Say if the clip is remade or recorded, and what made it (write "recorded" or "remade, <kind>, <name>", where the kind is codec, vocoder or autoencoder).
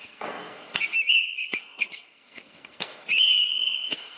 remade, codec, SNAC